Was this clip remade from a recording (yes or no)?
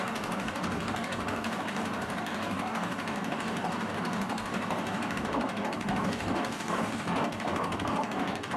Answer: yes